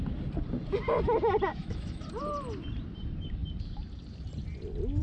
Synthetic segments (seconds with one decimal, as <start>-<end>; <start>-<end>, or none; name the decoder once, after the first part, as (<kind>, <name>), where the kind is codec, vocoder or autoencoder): 1.5-2.0 (autoencoder, DAC-VAE)